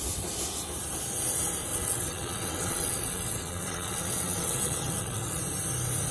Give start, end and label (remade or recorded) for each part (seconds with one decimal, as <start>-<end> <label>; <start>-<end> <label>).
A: 0.0-1.7 recorded; 1.7-5.4 remade; 5.4-6.1 recorded